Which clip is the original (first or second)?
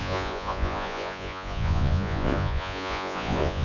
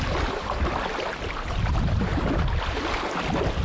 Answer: second